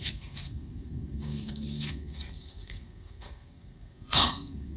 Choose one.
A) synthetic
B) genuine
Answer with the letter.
A